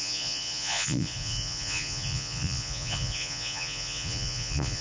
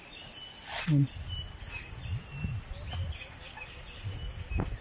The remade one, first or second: first